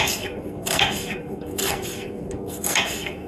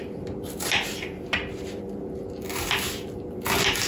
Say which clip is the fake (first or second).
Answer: first